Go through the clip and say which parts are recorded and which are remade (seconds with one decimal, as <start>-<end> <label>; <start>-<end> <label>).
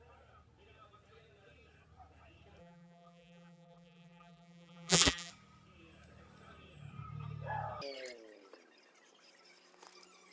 0.0-2.6 recorded; 2.6-5.3 remade; 5.3-10.3 recorded